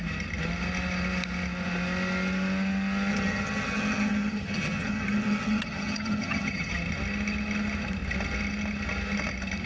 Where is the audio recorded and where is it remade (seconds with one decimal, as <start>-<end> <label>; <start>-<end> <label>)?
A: 0.0-3.1 recorded; 3.1-6.7 remade; 6.7-9.7 recorded